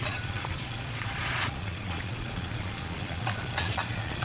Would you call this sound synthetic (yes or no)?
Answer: yes